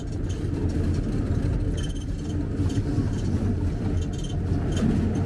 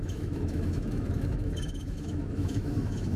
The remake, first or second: second